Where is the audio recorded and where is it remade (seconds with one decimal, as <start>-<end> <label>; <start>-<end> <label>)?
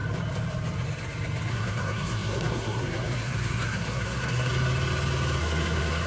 0.0-1.5 recorded; 1.5-4.5 remade; 4.5-5.4 recorded; 5.4-6.1 remade